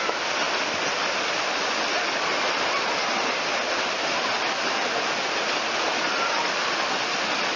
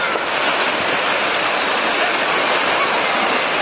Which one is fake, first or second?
first